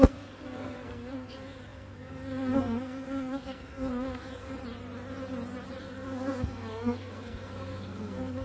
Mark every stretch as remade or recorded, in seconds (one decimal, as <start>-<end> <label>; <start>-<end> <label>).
0.0-4.6 remade; 4.6-5.8 recorded; 5.8-8.4 remade